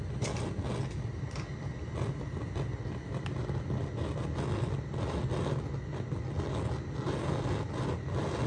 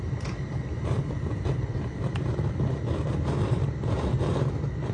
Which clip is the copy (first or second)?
second